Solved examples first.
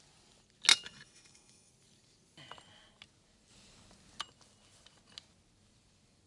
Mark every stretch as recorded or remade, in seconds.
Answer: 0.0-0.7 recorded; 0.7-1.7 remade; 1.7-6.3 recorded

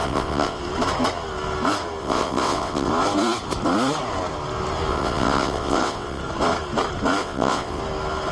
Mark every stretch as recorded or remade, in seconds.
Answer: 0.0-0.6 remade; 0.6-2.0 recorded; 2.0-2.9 remade; 2.9-4.9 recorded; 4.9-6.2 remade; 6.2-7.2 recorded; 7.2-7.8 remade; 7.8-8.3 recorded

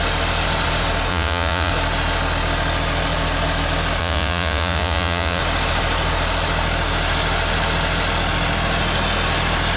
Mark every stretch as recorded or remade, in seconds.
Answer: 0.0-1.1 recorded; 1.1-1.7 remade; 1.7-4.0 recorded; 4.0-5.4 remade; 5.4-9.8 recorded

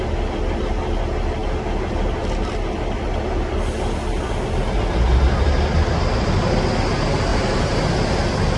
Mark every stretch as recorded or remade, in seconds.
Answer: 0.0-7.3 recorded; 7.3-7.9 remade; 7.9-8.6 recorded